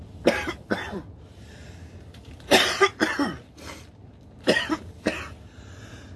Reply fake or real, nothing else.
fake